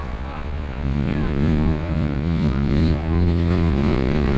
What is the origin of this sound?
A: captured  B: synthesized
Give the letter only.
B